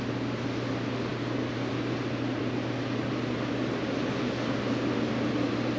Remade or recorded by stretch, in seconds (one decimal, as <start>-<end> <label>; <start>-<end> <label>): 0.0-5.8 recorded